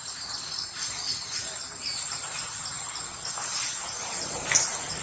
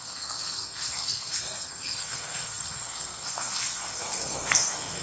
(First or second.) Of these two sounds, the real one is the first